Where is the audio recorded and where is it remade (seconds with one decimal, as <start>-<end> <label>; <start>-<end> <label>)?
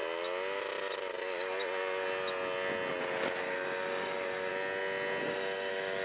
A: 0.0-3.4 recorded; 3.4-4.5 remade; 4.5-5.2 recorded; 5.2-6.0 remade